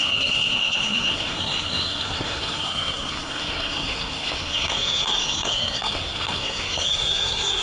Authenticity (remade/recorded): remade